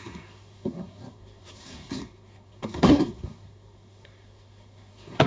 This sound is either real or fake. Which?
fake